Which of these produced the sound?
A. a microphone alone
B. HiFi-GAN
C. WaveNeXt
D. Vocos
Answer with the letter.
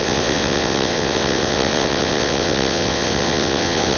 C